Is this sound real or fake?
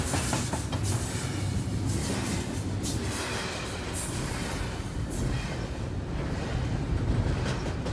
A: real